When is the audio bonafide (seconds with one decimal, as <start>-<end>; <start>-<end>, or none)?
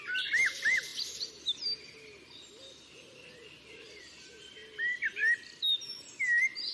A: 0.0-6.7